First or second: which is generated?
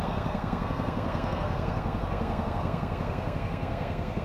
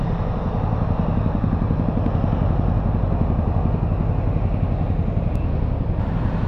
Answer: first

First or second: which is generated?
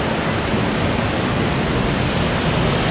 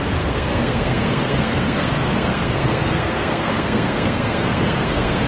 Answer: second